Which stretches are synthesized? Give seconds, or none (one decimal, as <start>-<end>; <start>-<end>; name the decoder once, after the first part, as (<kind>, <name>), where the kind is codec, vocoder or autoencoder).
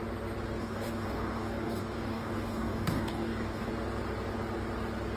0.6-3.7 (codec, DAC)